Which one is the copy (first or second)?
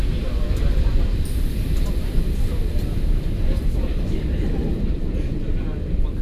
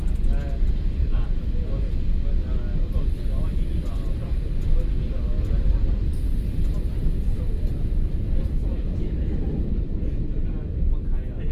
first